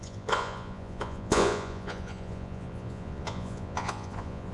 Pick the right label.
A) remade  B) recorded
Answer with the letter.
A